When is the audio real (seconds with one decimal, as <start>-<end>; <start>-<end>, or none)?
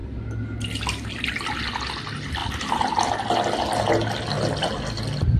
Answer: 0.0-5.4